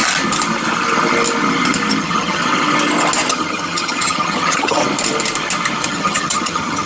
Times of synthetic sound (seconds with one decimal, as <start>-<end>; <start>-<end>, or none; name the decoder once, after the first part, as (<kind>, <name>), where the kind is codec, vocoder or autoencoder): 2.0-2.4 (vocoder, HiFi-GAN); 3.3-4.8; 5.9-6.9